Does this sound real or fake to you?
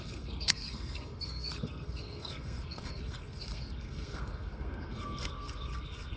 fake